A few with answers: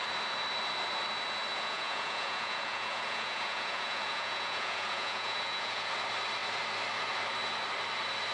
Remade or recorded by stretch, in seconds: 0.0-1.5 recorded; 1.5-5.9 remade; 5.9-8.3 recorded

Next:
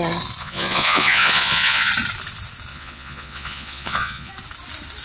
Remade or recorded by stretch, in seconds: 0.0-0.4 recorded; 0.4-1.9 remade; 1.9-2.7 recorded; 2.7-4.3 remade; 4.3-5.0 recorded

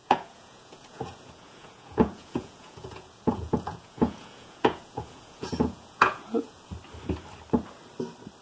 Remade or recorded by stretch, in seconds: 0.0-6.7 remade; 6.7-8.4 recorded